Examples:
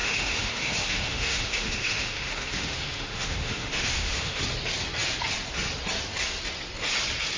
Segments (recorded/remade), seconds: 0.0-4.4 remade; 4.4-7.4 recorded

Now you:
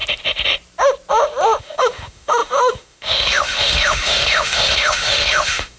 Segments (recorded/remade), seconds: 0.0-1.6 recorded; 1.6-5.8 remade

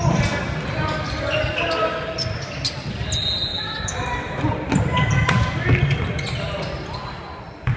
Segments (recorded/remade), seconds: 0.0-3.5 recorded; 3.5-4.4 remade; 4.4-7.8 recorded